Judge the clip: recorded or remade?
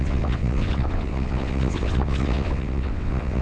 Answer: remade